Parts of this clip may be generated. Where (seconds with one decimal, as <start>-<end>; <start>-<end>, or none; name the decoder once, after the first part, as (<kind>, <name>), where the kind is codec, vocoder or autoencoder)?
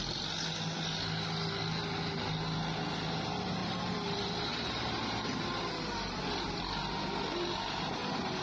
3.6-6.2 (vocoder, BigVGAN v2)